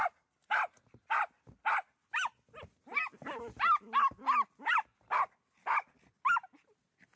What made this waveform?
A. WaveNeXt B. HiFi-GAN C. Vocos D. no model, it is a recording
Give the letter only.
D